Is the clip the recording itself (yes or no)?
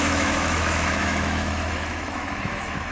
no